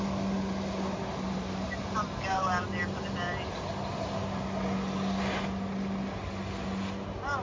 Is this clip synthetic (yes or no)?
no